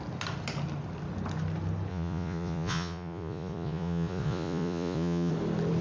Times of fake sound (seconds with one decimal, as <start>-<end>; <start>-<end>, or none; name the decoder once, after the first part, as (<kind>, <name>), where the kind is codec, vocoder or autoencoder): 1.9-5.3 (vocoder, Vocos)